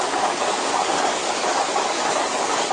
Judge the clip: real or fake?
fake